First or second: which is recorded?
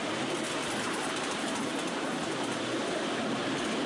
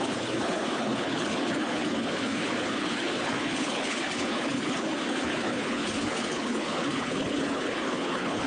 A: first